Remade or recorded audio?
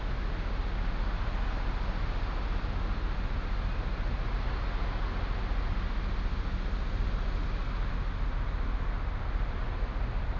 recorded